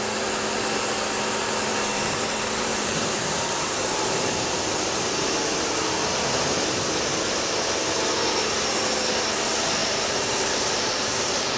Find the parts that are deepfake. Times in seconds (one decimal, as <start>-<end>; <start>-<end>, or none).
1.7-2.2; 2.7-6.3; 9.8-11.6